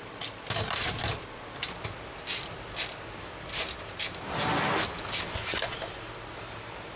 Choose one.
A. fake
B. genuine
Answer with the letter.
B